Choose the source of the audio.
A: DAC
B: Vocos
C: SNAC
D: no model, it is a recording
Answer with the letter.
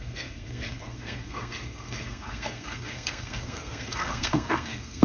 C